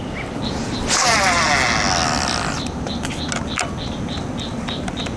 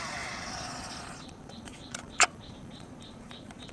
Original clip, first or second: first